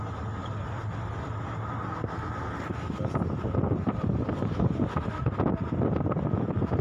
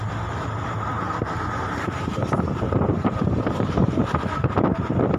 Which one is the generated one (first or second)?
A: second